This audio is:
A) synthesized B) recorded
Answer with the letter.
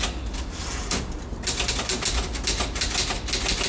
B